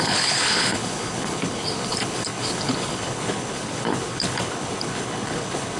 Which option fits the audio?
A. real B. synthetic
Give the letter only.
B